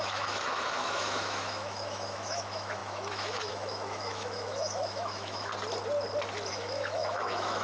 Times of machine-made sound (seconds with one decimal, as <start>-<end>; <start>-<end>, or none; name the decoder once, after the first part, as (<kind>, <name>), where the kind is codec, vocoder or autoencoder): 0.0-5.5 (autoencoder, DAC-VAE); 6.5-7.6